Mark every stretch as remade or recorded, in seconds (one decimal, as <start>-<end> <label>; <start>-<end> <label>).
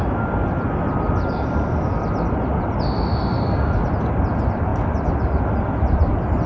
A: 0.0-6.5 recorded